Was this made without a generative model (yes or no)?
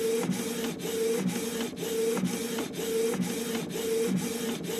yes